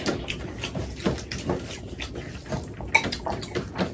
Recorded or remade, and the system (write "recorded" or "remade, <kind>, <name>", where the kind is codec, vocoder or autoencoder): recorded